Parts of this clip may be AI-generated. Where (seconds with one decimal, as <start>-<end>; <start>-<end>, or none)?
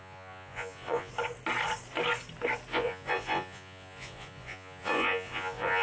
0.0-1.1; 2.7-5.8